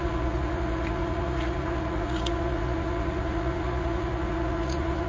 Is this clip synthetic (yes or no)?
yes